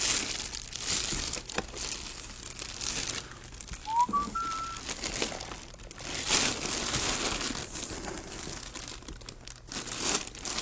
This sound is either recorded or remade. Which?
recorded